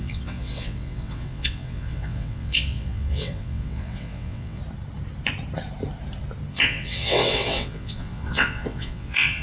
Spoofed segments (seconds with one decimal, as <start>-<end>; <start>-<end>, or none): 0.0-4.6; 6.5-9.4